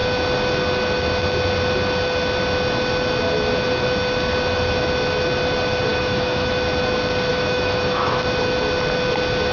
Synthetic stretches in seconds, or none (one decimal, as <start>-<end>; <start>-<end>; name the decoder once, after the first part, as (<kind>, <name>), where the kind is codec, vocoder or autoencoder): 5.9-6.5 (autoencoder, DAC-VAE); 7.3-8.2